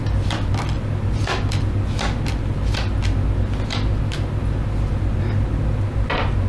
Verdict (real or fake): real